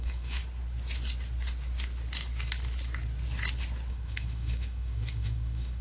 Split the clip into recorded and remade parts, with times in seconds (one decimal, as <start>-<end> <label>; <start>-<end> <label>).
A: 0.0-0.4 remade; 0.4-3.9 recorded; 3.9-5.8 remade